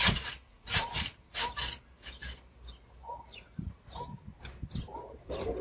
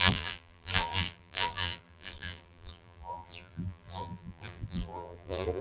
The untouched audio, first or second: first